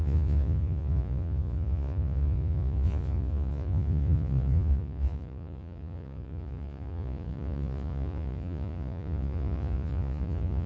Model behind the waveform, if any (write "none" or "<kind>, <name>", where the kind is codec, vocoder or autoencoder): vocoder, Vocos